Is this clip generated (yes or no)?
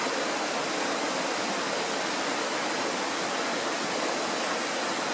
no